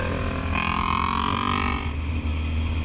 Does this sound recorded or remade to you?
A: recorded